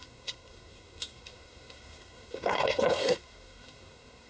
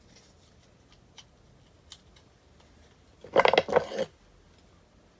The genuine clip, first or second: second